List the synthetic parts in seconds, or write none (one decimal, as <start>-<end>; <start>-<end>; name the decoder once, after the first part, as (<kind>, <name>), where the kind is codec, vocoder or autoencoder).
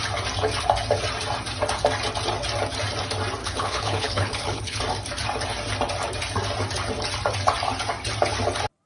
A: 3.4-4.8 (codec, HILCodec)